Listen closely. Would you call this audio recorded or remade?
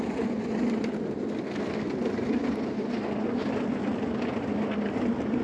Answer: recorded